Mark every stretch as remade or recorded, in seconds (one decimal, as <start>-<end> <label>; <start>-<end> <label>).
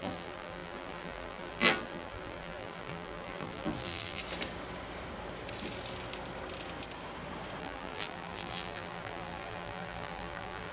0.0-4.2 remade; 4.2-7.6 recorded; 7.6-10.7 remade